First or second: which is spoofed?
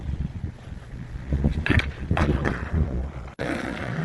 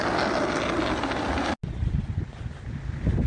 first